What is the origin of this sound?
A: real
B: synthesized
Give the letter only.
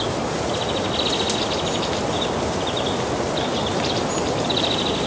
A